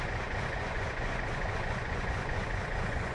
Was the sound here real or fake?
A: fake